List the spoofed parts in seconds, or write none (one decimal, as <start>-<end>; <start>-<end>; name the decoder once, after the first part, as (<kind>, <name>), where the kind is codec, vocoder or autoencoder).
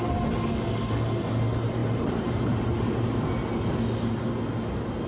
1.8-2.9 (vocoder, BigVGAN v2)